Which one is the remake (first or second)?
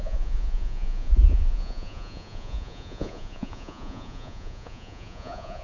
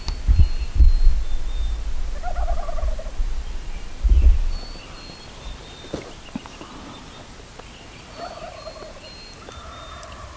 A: first